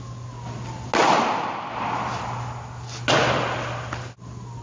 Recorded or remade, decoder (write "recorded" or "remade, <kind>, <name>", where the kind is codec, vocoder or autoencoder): recorded